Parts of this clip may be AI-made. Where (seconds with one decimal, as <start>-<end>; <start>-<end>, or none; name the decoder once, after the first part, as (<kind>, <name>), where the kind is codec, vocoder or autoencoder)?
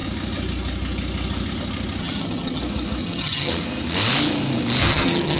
2.0-2.6 (vocoder, HiFi-GAN); 3.0-3.5; 4.8-5.4